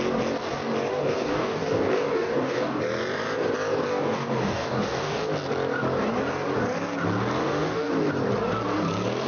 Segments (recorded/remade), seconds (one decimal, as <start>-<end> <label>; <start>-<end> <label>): 0.0-0.9 recorded; 0.9-2.8 remade; 2.8-3.9 recorded; 3.9-5.2 remade; 5.2-7.4 recorded; 7.4-7.9 remade; 7.9-9.3 recorded